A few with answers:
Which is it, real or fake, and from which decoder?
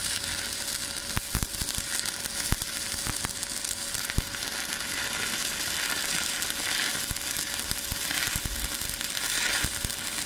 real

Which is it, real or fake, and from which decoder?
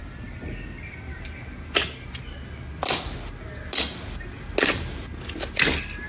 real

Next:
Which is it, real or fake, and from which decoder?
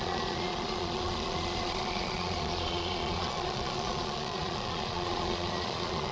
fake, vocoder, Vocos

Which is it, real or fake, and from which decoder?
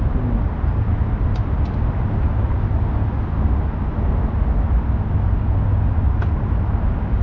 real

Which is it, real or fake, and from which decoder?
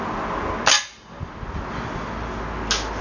real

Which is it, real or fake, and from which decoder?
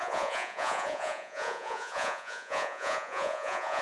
fake, vocoder, Vocos